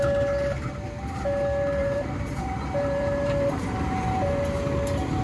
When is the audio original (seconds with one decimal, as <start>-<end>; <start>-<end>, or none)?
0.0-1.8; 3.9-5.2